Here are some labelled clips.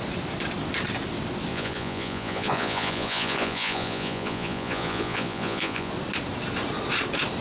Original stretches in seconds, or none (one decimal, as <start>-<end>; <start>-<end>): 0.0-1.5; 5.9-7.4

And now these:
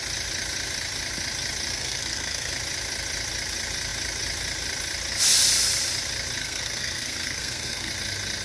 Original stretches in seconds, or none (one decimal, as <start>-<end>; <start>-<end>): 0.0-1.7; 2.5-6.4; 7.9-8.4

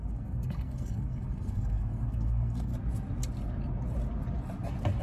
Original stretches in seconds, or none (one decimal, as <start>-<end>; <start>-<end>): 2.7-5.0

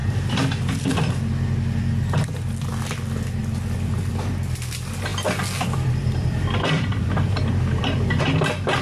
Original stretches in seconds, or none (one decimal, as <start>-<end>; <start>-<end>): 1.1-3.4; 4.1-5.1; 8.2-8.8

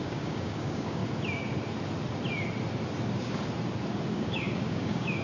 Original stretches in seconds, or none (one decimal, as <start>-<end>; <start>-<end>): 1.0-4.1

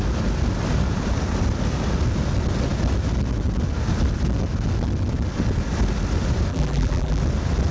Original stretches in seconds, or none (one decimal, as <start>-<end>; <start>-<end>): 0.0-6.5; 7.2-7.7

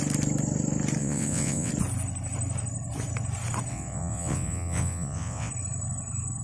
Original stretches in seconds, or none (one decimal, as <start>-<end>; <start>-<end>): 0.0-1.0; 1.7-3.7; 5.5-6.4